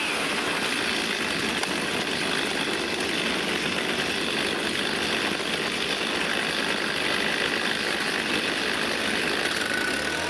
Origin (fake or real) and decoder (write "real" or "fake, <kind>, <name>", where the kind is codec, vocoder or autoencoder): real